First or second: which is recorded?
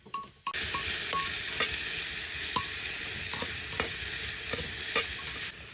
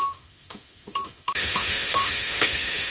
first